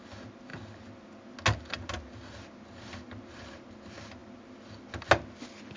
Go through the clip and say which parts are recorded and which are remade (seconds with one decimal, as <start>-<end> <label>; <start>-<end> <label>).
0.0-5.8 recorded